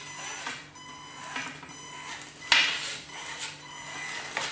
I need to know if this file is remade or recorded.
recorded